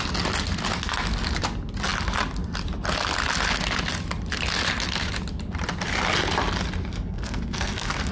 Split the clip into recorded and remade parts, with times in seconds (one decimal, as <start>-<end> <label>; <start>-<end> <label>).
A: 0.0-6.9 recorded; 6.9-8.1 remade